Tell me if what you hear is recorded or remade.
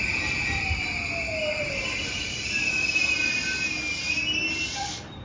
recorded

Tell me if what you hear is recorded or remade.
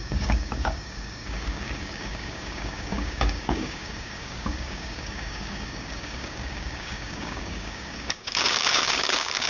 remade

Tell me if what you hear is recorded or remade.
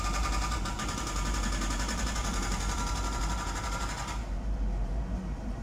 remade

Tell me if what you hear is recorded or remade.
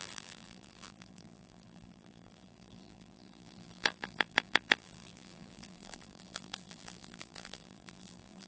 remade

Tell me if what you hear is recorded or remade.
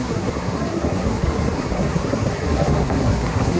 remade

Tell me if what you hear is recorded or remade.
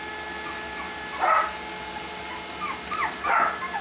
recorded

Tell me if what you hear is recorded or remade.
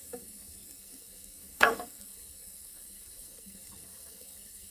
remade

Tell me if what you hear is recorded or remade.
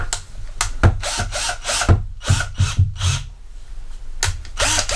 recorded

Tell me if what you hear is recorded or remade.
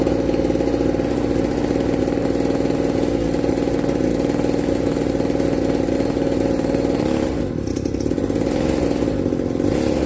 recorded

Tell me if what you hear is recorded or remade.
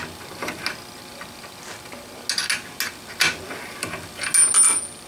recorded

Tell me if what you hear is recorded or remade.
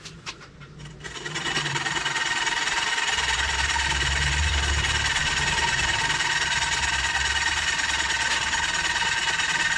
remade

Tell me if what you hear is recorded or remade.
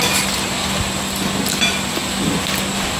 recorded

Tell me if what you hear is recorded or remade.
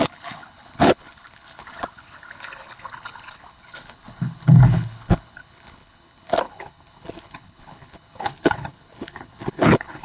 remade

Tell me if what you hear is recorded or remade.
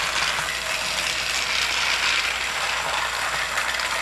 recorded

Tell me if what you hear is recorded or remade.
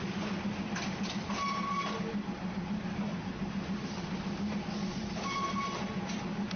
recorded